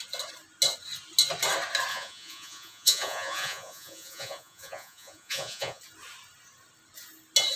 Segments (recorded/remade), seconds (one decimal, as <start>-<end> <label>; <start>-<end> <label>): 0.0-1.9 recorded; 1.9-5.8 remade; 5.8-7.6 recorded